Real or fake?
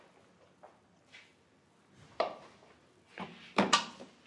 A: real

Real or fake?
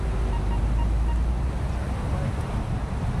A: real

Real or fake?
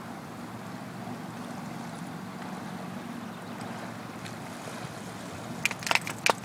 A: real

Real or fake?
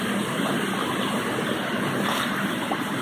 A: real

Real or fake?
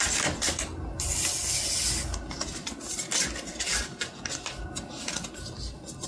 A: real